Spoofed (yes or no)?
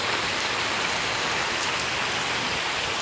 no